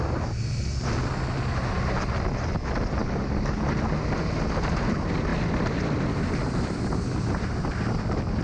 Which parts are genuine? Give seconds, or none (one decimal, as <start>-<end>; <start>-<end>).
0.0-3.0; 3.6-8.4